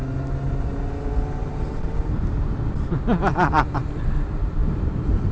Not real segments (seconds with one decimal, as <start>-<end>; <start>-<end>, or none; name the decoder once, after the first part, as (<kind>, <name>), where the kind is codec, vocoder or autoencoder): 1.4-2.1 (vocoder, BigVGAN v2); 3.3-3.9; 4.6-5.3